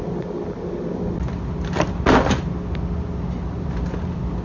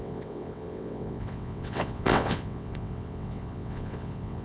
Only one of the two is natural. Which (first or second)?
first